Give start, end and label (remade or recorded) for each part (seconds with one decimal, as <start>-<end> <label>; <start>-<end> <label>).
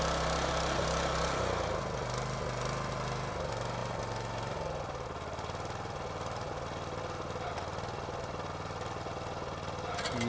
0.0-10.3 recorded